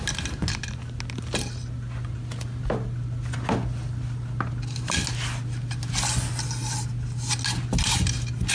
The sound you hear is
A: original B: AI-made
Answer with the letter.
A